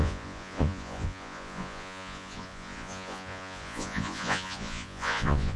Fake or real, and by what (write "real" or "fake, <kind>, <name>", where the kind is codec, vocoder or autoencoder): fake, vocoder, Vocos